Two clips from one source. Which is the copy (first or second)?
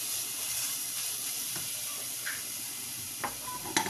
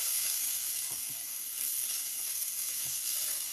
second